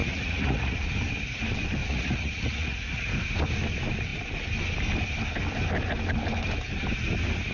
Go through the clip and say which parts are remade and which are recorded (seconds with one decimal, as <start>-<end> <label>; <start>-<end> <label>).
0.0-0.9 remade; 0.9-1.8 recorded; 1.8-3.1 remade; 3.1-7.5 recorded